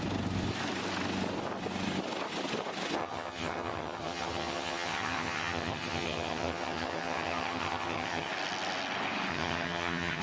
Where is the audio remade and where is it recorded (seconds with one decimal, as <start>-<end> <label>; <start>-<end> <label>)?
0.0-3.0 recorded; 3.0-8.3 remade; 8.3-9.3 recorded; 9.3-10.2 remade